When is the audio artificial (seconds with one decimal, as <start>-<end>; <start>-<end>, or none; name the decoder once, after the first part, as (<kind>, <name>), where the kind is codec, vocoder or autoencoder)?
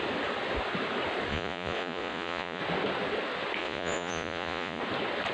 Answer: 1.3-2.6 (vocoder, Vocos); 3.6-4.8